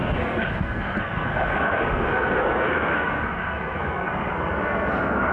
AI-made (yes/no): yes